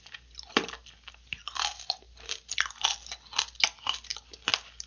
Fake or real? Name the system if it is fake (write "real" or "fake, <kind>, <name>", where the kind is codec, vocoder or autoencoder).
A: real